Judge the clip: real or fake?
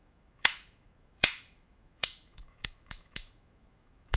fake